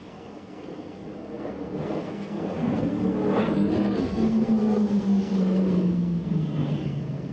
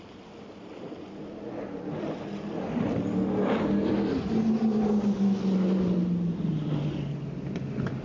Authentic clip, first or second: second